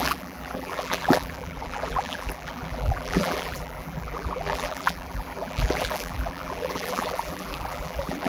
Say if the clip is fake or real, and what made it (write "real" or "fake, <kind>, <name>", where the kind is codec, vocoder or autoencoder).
fake, vocoder, BigVGAN v2